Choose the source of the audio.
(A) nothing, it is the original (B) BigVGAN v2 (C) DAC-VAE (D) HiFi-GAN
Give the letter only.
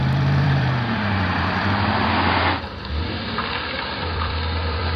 B